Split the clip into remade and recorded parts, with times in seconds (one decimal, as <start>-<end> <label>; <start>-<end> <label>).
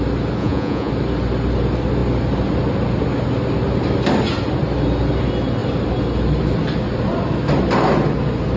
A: 0.0-0.4 recorded; 0.4-0.9 remade; 0.9-8.6 recorded